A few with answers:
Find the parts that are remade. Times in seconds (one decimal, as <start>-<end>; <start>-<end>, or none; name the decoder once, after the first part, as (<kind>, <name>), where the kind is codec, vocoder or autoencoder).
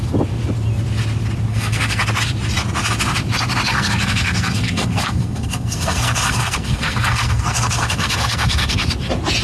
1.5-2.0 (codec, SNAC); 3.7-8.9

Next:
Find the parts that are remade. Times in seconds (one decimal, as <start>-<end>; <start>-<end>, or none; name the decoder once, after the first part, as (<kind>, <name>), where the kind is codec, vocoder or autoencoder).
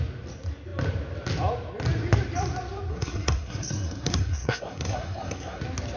2.9-5.6 (codec, SNAC)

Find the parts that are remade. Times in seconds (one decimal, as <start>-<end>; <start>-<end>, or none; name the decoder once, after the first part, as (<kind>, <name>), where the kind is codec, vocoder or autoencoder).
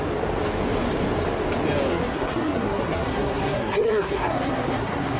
1.9-5.2 (codec, SNAC)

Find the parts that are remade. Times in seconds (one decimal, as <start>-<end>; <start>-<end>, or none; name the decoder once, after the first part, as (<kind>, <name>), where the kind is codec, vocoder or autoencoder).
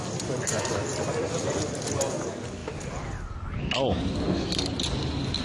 none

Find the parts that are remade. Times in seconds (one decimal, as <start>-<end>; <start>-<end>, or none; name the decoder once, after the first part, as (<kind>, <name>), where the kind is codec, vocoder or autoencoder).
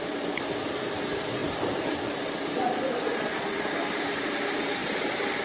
none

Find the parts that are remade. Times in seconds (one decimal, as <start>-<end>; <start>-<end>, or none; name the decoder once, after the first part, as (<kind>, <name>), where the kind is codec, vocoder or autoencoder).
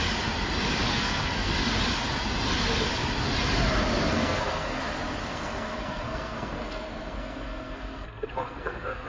0.9-1.5 (codec, SNAC); 4.1-4.8; 5.2-9.1